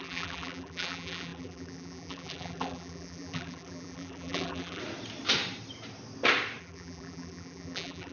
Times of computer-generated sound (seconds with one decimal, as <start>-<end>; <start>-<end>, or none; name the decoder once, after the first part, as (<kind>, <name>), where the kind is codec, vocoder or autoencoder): 0.0-4.8 (vocoder, BigVGAN v2); 6.6-8.1